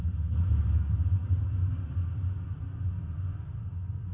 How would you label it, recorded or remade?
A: recorded